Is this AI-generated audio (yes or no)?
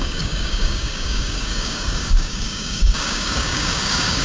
yes